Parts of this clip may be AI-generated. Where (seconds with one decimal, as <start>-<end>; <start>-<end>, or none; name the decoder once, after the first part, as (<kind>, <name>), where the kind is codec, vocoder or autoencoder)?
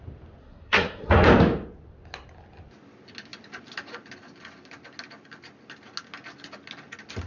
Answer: 0.4-1.1 (codec, SNAC)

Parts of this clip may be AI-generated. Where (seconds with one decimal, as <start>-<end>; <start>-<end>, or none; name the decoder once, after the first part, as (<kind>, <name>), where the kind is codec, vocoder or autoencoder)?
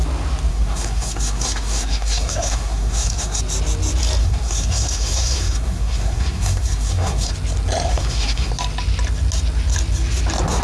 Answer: 0.5-3.4 (codec, SNAC); 4.2-7.3; 7.9-8.5